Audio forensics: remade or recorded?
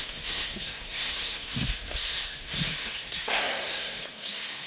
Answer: remade